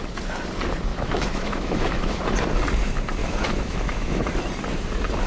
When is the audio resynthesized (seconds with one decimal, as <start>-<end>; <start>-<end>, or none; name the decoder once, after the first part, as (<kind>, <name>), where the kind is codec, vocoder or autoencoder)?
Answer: 0.9-2.2 (autoencoder, DAC-VAE); 3.2-4.3